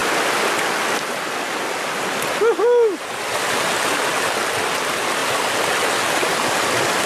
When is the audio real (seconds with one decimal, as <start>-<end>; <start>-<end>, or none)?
0.0-7.1